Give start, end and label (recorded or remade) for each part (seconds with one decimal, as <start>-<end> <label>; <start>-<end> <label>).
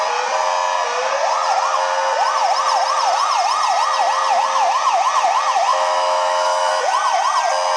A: 0.0-5.7 recorded; 5.7-6.7 remade; 6.7-7.8 recorded